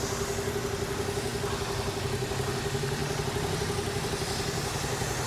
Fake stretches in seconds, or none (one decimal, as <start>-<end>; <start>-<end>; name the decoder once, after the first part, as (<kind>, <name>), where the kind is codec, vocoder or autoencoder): none